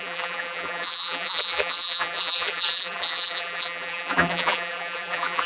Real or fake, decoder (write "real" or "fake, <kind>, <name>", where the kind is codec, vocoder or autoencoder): fake, vocoder, BigVGAN v2